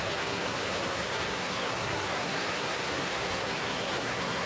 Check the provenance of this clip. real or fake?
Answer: fake